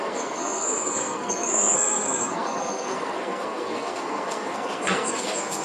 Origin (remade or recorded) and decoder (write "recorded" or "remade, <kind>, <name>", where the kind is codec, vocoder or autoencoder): remade, codec, SNAC